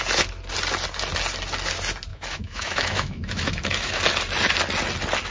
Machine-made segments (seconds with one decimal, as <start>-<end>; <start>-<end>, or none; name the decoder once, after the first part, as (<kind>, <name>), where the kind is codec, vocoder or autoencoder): 2.1-4.0 (autoencoder, DAC-VAE)